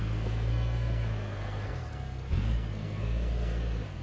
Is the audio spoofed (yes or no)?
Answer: yes